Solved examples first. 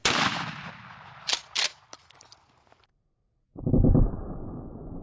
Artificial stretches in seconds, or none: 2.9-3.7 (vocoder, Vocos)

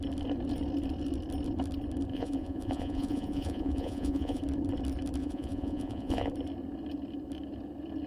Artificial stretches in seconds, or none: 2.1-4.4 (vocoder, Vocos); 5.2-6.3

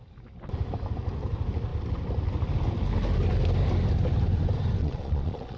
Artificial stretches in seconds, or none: 4.8-5.6 (vocoder, Vocos)